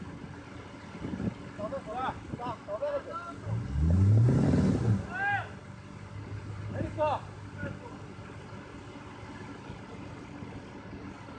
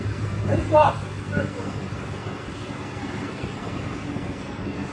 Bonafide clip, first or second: first